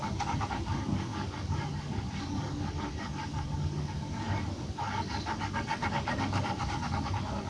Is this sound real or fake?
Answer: fake